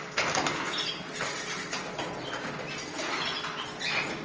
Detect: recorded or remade recorded